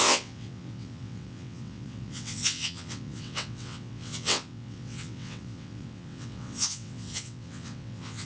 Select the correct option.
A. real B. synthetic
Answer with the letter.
B